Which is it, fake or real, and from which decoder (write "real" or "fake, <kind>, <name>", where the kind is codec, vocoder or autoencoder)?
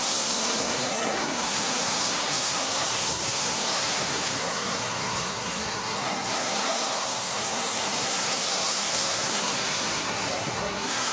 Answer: fake, codec, SNAC